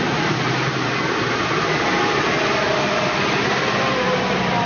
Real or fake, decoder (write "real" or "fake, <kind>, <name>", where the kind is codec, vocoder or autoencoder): real